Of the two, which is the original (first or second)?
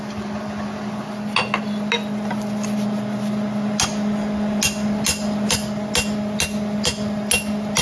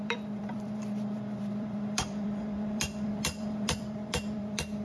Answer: first